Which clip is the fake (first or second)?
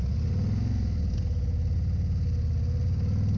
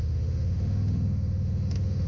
second